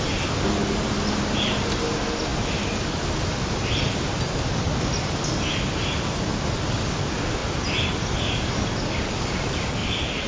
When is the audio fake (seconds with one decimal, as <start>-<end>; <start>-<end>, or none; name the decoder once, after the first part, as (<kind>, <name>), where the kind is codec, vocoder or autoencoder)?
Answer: 9.8-10.3 (vocoder, BigVGAN v2)